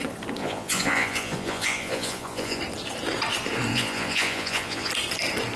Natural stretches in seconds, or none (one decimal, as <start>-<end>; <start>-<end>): 0.0-0.4; 2.6-3.7; 4.9-5.6